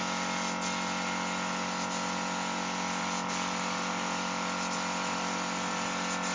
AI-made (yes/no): no